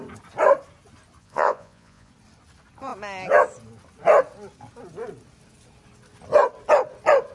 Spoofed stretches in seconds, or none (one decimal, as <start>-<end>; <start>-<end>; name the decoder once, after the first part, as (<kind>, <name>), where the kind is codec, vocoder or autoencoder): 1.2-2.1 (vocoder, Vocos)